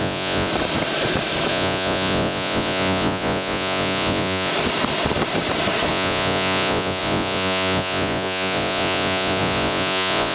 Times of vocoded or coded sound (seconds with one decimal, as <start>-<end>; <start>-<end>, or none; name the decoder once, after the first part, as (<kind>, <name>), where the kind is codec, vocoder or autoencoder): 0.0-0.5 (vocoder, Vocos); 1.5-4.5; 5.9-10.3